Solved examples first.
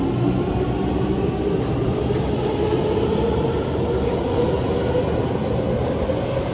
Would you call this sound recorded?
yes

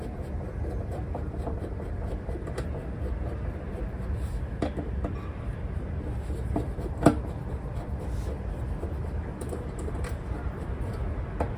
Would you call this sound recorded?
no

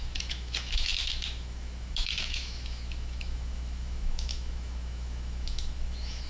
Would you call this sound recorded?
no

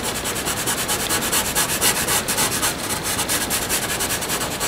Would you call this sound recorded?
yes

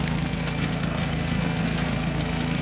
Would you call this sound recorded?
no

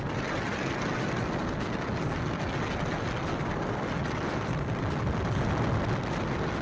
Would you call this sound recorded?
yes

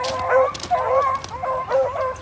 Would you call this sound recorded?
yes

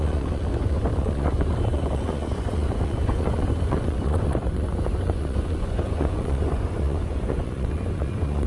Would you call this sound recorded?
no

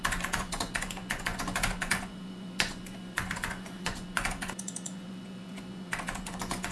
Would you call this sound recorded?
no